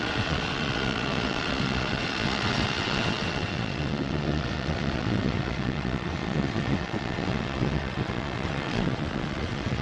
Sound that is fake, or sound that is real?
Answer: fake